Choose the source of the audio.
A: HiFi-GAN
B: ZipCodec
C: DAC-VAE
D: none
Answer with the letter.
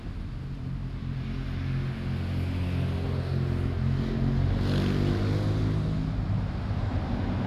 D